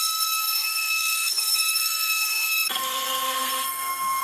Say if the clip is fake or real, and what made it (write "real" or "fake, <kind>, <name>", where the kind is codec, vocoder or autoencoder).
fake, codec, SNAC